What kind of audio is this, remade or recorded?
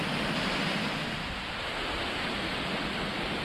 recorded